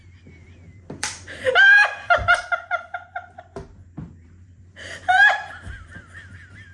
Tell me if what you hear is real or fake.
fake